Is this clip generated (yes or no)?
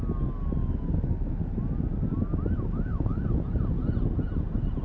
no